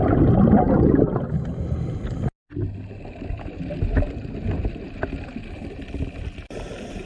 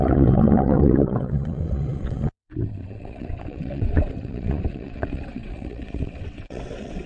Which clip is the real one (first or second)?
first